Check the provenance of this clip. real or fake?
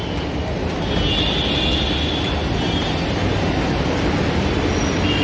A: real